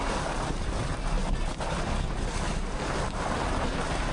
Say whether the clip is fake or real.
real